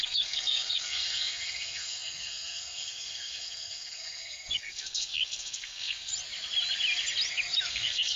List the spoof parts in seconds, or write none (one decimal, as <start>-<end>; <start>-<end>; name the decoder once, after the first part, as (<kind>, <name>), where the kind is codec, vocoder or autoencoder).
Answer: 0.0-6.1 (codec, SNAC); 7.7-8.2